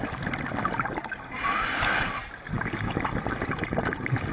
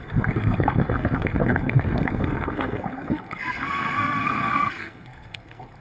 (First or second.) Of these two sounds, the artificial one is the second